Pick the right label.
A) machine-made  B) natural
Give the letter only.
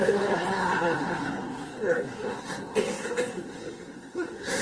A